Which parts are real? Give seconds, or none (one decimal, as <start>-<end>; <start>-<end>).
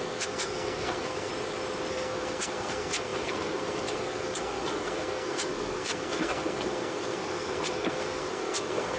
1.3-1.9